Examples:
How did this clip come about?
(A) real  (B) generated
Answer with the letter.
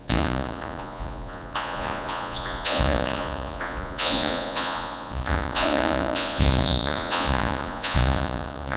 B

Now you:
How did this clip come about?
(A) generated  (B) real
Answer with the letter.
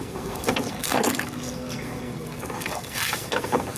A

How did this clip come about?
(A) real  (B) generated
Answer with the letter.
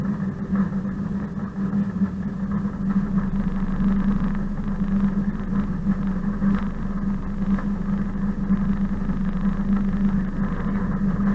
A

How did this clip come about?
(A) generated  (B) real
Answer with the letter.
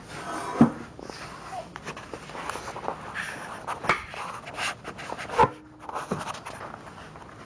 B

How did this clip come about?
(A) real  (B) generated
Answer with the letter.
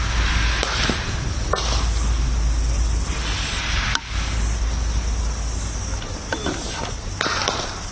A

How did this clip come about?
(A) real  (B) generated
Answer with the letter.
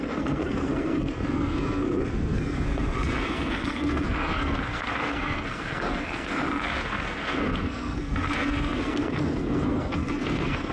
B